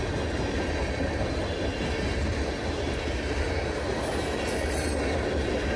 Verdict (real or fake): real